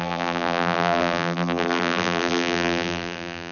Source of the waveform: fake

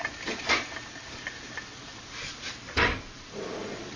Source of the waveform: fake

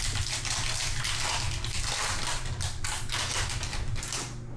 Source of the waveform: real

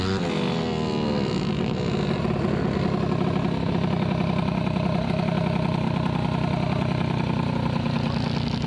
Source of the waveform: real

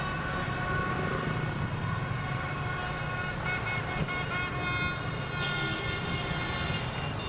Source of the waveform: real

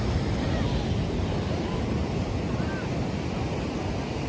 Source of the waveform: real